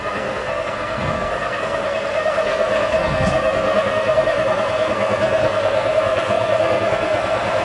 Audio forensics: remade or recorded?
remade